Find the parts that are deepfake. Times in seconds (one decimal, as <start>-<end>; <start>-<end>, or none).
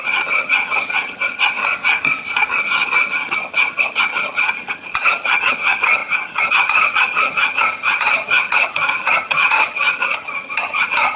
0.0-1.6; 2.6-11.2